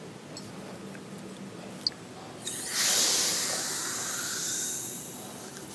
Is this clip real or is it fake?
real